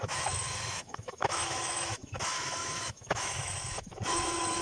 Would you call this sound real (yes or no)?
no